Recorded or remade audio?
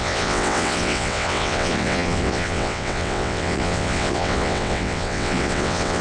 remade